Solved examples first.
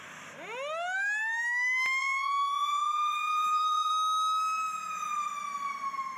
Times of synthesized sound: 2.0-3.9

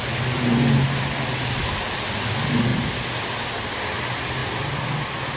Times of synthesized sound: none

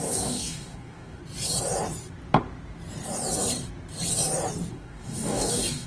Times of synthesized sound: 0.0-1.2; 4.7-5.9

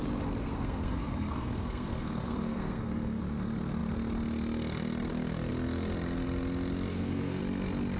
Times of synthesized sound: 0.4-3.2; 6.9-7.4

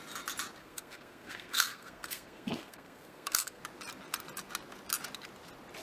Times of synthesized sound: 0.6-3.6

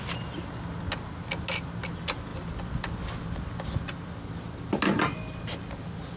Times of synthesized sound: none

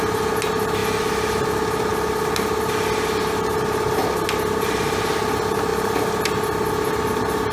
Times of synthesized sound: 1.9-2.9

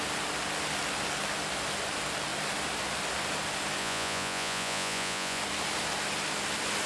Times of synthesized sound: 3.8-5.4